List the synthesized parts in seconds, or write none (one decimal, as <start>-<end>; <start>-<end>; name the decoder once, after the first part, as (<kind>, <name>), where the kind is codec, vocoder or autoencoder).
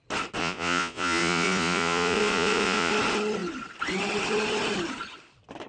0.4-2.9 (vocoder, Vocos)